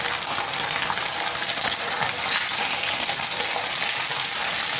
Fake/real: real